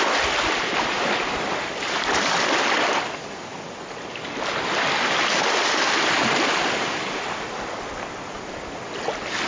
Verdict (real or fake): real